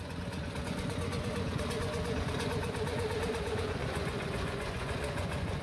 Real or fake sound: fake